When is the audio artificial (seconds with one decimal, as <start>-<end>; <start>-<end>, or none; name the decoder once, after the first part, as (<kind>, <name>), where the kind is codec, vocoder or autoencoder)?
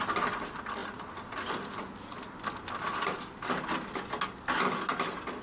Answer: none